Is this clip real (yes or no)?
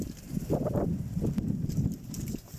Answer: yes